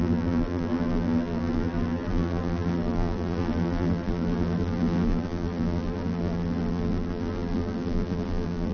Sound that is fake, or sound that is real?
fake